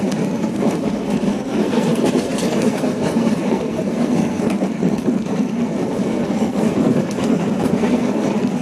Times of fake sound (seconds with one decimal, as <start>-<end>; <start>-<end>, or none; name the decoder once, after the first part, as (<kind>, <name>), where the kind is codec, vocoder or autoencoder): 0.0-8.6 (codec, SNAC)